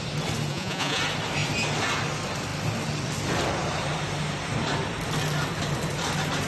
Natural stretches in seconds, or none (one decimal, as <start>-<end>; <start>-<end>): 0.0-0.5; 1.0-6.5